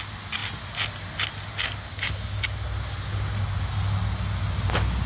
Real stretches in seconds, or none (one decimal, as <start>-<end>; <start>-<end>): 0.0-5.1